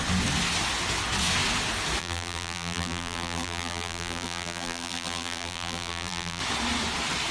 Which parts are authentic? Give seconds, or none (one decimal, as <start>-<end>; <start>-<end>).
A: 0.0-2.0; 6.4-7.3